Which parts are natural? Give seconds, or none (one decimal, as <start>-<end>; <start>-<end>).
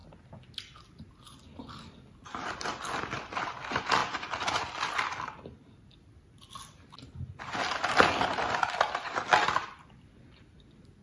0.0-11.0